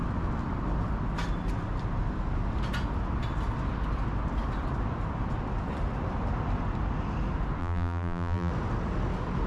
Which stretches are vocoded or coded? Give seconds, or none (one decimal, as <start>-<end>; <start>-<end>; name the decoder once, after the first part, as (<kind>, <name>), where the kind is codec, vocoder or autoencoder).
7.6-8.5 (vocoder, BigVGAN v2)